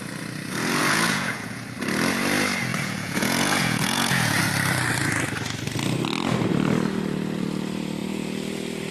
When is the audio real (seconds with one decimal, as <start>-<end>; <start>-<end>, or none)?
0.0-0.8; 1.6-2.7; 4.4-8.9